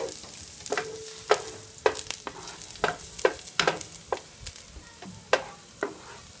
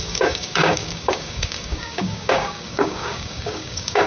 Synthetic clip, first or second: second